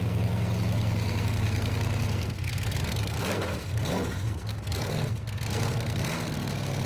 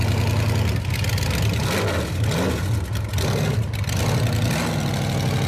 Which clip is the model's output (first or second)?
first